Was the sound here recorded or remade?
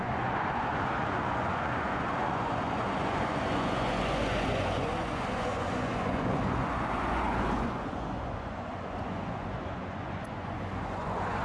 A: remade